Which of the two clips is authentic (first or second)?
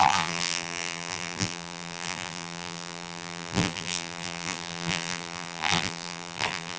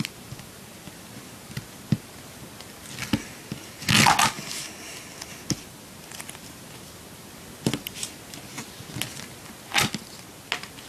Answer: second